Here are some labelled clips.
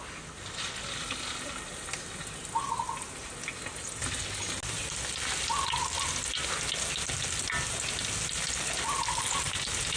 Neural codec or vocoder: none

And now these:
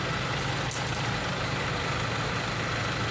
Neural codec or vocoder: none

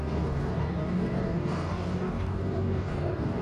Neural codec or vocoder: codec, DAC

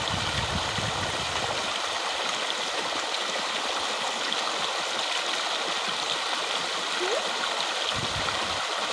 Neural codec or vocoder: none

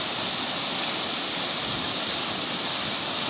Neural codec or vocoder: none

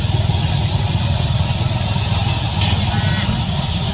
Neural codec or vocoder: none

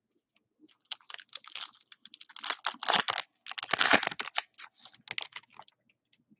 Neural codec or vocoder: none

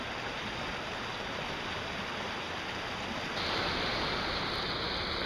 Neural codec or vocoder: none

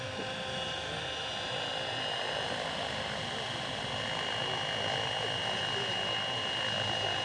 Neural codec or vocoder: none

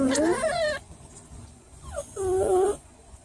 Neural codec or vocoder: vocoder, Vocos